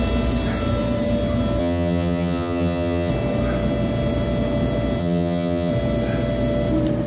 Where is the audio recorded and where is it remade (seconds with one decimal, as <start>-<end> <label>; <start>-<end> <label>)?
0.0-1.6 recorded; 1.6-3.1 remade; 3.1-5.0 recorded; 5.0-5.7 remade; 5.7-7.1 recorded